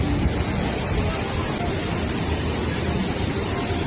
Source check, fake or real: real